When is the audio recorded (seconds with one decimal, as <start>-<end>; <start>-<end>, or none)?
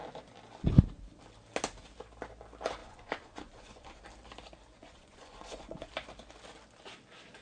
0.0-2.8; 4.0-4.8; 5.9-7.4